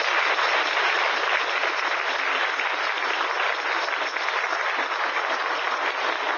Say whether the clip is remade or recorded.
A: recorded